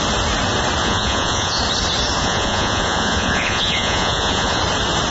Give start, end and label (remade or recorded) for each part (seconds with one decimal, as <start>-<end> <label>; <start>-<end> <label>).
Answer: 0.0-0.8 recorded; 0.8-1.6 remade; 1.6-2.2 recorded; 2.2-4.6 remade; 4.6-5.1 recorded